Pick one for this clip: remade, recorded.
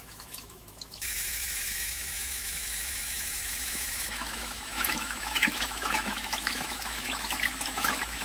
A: remade